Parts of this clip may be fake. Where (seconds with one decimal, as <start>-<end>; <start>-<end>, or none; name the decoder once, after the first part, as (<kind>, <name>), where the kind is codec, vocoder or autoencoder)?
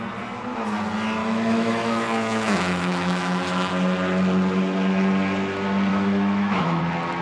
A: 1.2-3.7 (autoencoder, DAC-VAE); 5.9-6.8